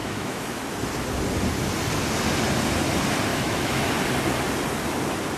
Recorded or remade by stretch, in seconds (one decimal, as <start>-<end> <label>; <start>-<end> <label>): 0.0-0.6 remade; 0.6-3.3 recorded; 3.3-3.9 remade; 3.9-5.4 recorded